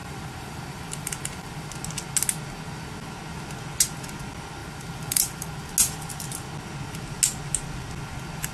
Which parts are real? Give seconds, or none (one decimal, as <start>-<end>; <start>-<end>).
1.7-4.6; 5.7-8.5